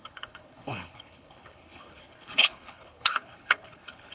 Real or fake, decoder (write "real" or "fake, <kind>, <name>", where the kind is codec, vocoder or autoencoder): fake, codec, HILCodec